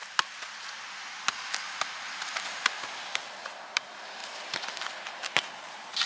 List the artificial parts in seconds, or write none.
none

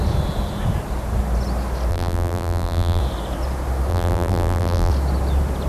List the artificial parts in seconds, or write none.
1.9-3.0 (vocoder, BigVGAN v2); 3.9-4.9